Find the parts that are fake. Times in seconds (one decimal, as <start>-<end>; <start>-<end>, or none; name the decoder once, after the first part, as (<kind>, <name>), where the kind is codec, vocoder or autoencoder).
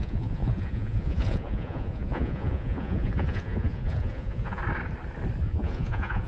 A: 0.0-4.6 (vocoder, Vocos); 5.4-6.3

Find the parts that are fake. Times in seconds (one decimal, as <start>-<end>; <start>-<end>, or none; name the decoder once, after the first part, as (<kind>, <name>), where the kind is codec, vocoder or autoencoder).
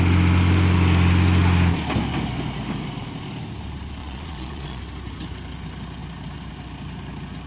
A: 4.0-4.8 (vocoder, Vocos)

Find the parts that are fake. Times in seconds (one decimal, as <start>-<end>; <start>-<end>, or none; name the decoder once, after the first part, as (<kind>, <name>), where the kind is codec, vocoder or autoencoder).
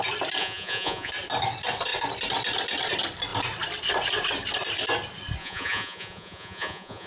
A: 0.4-1.1 (vocoder, Vocos); 5.4-7.1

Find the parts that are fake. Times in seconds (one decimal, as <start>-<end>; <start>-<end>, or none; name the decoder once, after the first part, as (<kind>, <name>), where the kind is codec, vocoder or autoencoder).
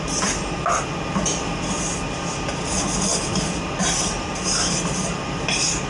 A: none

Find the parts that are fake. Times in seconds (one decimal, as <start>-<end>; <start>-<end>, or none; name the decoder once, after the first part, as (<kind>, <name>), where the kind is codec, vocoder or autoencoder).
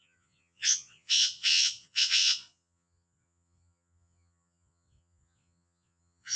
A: 0.0-6.4 (vocoder, Vocos)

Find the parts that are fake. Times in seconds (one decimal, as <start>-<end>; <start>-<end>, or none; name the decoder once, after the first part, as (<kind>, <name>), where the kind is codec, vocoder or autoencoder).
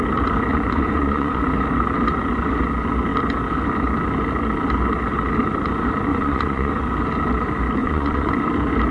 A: 0.5-1.4 (vocoder, Vocos); 6.1-6.7; 7.8-8.3